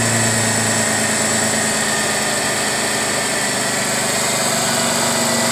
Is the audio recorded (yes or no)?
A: yes